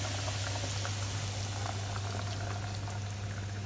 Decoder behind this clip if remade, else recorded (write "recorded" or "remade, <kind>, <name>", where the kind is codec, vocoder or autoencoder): recorded